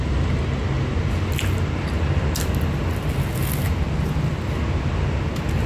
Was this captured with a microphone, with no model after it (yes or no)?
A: yes